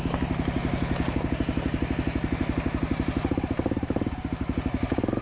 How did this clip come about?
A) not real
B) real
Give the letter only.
B